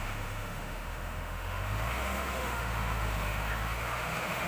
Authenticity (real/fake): fake